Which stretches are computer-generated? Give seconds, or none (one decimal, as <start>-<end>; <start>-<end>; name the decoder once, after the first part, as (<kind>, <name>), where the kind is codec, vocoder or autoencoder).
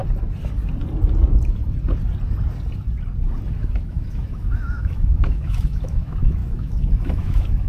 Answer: 3.6-7.7 (autoencoder, DAC-VAE)